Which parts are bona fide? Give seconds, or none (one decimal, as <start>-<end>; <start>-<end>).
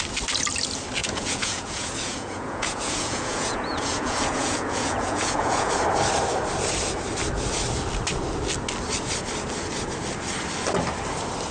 0.0-1.0; 5.7-11.5